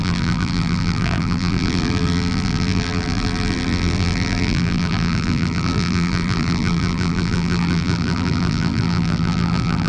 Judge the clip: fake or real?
fake